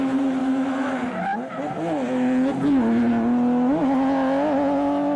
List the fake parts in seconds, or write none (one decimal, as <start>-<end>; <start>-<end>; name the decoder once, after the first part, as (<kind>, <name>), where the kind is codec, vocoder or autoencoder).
0.4-0.9 (autoencoder, DAC-VAE)